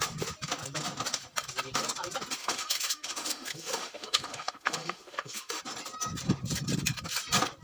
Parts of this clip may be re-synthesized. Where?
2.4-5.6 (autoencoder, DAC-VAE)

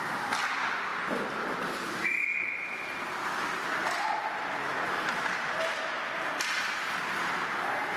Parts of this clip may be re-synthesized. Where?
3.8-6.3 (vocoder, BigVGAN v2)